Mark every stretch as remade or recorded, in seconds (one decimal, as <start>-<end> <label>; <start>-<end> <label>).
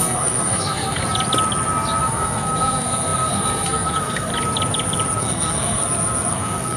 0.0-1.0 remade; 1.0-2.0 recorded; 2.0-4.3 remade; 4.3-5.2 recorded; 5.2-5.8 remade; 5.8-6.3 recorded; 6.3-6.8 remade